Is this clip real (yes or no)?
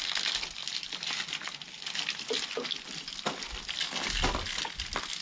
yes